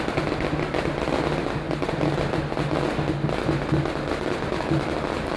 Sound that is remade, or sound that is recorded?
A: recorded